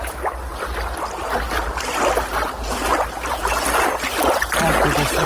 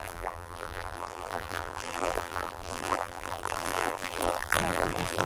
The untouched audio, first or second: first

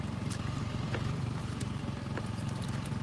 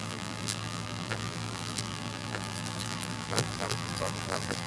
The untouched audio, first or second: first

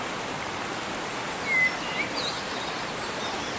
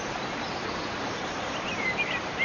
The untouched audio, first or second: first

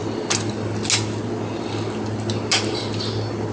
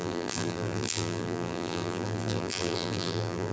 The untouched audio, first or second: first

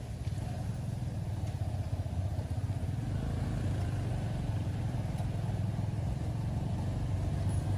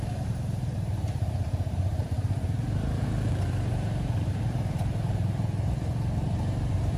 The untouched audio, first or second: first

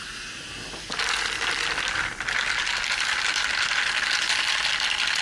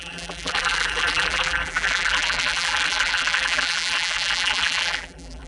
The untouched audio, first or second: first